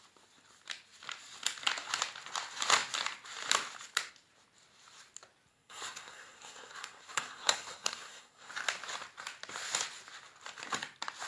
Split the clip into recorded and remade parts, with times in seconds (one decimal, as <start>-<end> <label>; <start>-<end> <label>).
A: 0.0-5.5 recorded; 5.5-8.5 remade; 8.5-11.3 recorded